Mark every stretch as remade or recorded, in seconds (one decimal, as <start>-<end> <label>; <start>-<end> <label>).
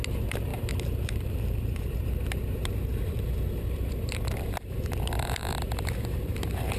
0.0-0.5 recorded; 0.5-2.2 remade; 2.2-2.9 recorded; 2.9-6.8 remade